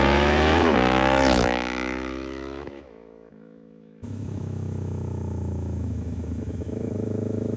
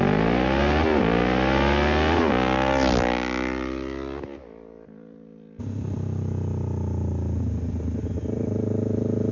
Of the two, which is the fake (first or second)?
first